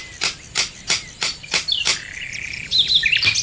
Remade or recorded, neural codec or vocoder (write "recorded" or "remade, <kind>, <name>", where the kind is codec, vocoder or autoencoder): recorded